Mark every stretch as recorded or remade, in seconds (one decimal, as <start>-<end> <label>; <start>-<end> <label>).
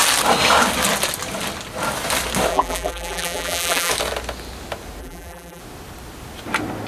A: 0.0-2.5 recorded; 2.5-3.9 remade; 3.9-5.0 recorded; 5.0-5.6 remade; 5.6-6.9 recorded